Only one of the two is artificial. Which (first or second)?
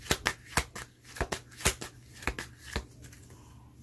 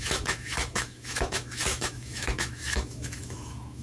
second